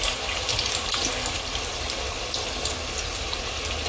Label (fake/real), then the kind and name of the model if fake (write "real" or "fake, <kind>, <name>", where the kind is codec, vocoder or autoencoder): real